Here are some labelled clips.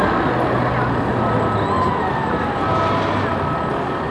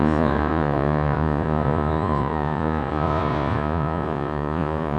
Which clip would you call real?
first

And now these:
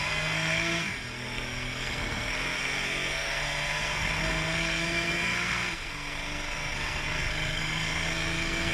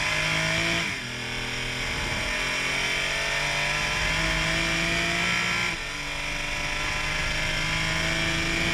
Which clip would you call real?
second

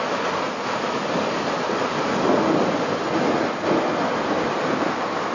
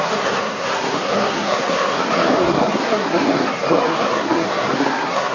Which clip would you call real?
first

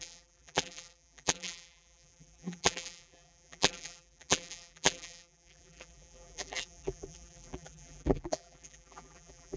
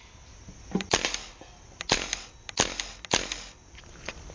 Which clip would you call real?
second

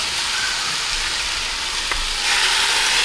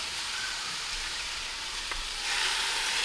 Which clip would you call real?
first